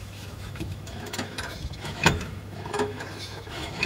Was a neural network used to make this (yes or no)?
yes